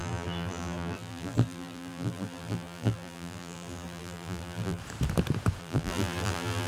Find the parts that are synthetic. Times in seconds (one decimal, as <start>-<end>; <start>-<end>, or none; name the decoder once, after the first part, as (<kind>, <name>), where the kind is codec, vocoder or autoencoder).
0.0-4.8 (vocoder, BigVGAN v2); 5.6-6.7